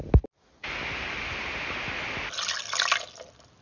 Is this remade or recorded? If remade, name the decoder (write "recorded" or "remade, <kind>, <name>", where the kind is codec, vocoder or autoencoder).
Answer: recorded